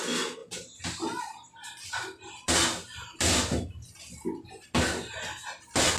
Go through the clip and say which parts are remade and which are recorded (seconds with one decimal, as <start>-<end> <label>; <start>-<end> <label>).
0.0-6.0 recorded